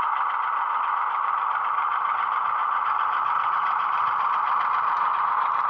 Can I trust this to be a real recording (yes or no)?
yes